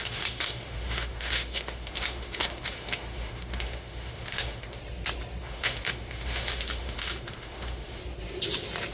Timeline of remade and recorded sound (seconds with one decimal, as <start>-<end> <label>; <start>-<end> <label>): 0.0-4.8 remade; 4.8-5.4 recorded; 5.4-8.0 remade; 8.0-8.9 recorded